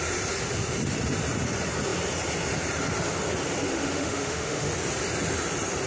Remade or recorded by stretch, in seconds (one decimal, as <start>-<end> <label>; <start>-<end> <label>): 0.0-3.7 recorded; 3.7-4.7 remade; 4.7-5.9 recorded